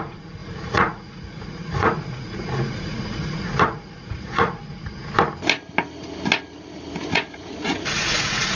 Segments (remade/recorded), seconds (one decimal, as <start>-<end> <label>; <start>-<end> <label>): 0.0-4.6 remade; 4.6-7.1 recorded; 7.1-8.6 remade